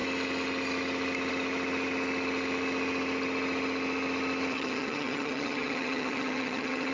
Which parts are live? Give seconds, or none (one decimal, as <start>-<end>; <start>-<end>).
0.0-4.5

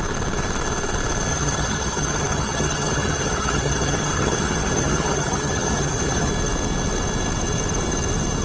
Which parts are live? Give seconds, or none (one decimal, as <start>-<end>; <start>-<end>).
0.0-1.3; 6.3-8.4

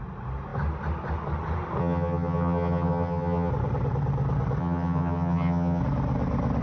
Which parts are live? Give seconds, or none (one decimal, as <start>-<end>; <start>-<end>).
0.0-1.8; 3.5-4.6; 5.8-6.6

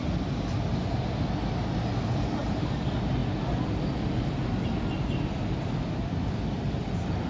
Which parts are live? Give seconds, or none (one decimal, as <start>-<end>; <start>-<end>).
0.0-7.3

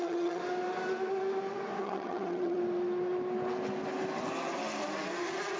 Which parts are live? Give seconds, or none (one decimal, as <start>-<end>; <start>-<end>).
0.4-1.8; 2.6-5.6